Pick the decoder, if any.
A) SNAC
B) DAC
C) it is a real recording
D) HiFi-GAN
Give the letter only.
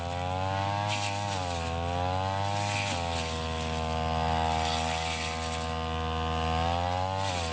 C